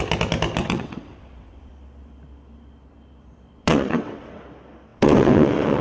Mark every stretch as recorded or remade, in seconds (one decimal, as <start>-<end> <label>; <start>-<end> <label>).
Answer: 0.0-0.6 recorded; 0.6-1.7 remade; 1.7-3.6 recorded; 3.6-4.4 remade; 4.4-4.9 recorded; 4.9-5.8 remade